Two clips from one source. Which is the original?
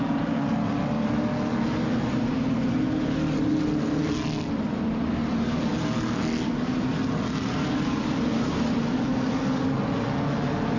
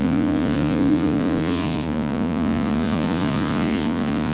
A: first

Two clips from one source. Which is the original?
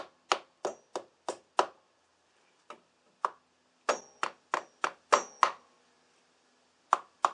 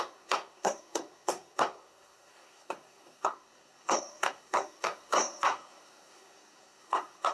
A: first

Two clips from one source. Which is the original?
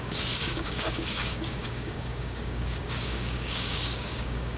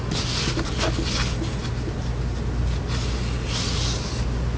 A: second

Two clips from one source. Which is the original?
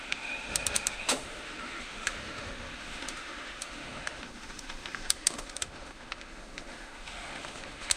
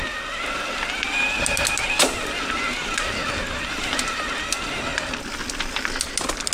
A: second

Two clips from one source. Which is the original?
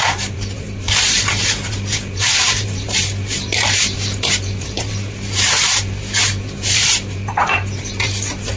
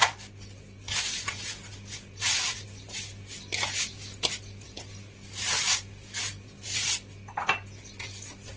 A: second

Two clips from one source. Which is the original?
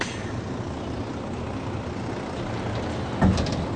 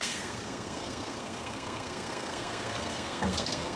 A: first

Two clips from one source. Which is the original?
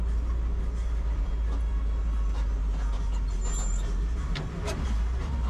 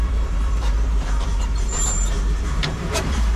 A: first